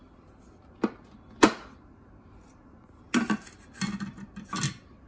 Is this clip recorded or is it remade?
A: recorded